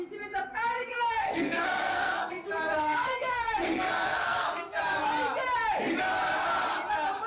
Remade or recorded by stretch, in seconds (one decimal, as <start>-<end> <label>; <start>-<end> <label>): 0.0-0.5 recorded; 0.5-4.8 remade; 4.8-7.3 recorded